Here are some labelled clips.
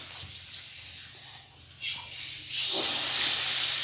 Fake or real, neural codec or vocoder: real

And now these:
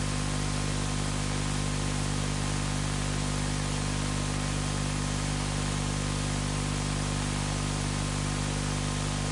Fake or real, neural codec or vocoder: real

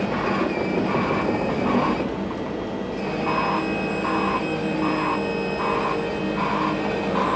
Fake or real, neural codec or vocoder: real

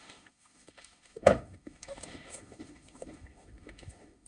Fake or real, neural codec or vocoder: fake, autoencoder, DAC-VAE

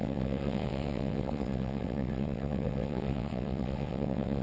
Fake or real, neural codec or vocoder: fake, vocoder, WaveNeXt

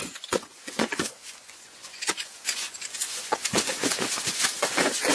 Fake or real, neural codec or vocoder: fake, vocoder, Vocos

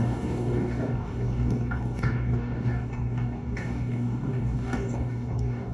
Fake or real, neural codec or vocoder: fake, codec, DAC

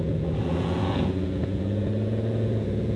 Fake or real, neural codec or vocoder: fake, vocoder, Vocos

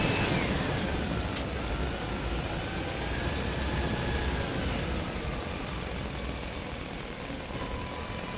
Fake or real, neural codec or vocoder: real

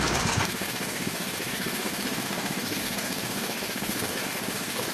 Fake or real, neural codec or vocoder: fake, codec, DAC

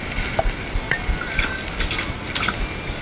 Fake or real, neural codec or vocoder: real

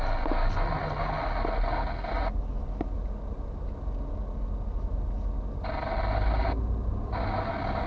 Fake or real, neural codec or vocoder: real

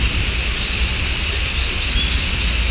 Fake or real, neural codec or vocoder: real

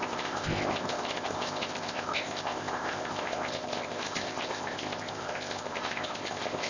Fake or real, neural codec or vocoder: fake, codec, ZipCodec